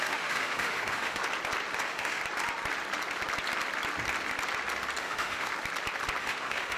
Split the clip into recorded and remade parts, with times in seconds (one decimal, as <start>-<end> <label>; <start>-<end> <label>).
0.0-1.2 remade; 1.2-1.8 recorded; 1.8-2.2 remade; 2.2-5.0 recorded; 5.0-5.5 remade; 5.5-6.2 recorded; 6.2-6.8 remade